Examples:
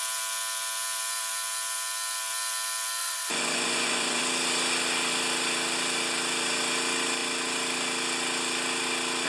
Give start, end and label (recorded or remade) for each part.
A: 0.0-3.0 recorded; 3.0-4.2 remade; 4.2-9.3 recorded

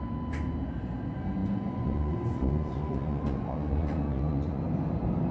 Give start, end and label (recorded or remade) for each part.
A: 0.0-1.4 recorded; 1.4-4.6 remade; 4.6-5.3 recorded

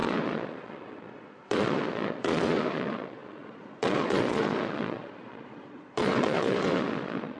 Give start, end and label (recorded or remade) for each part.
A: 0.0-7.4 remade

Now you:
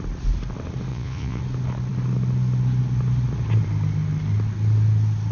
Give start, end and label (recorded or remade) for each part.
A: 0.0-0.9 recorded; 0.9-1.4 remade; 1.4-5.3 recorded

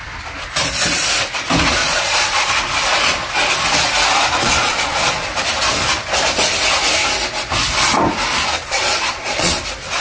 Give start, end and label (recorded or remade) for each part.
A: 0.0-1.8 recorded; 1.8-2.5 remade; 2.5-4.4 recorded; 4.4-5.1 remade; 5.1-8.6 recorded; 8.6-9.6 remade; 9.6-10.0 recorded

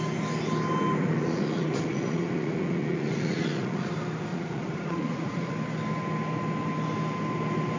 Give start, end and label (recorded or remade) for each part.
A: 0.0-1.0 recorded; 1.0-3.9 remade; 3.9-4.3 recorded; 4.3-5.5 remade; 5.5-7.8 recorded